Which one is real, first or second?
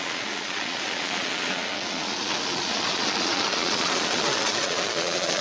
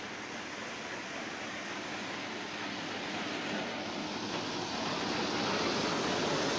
second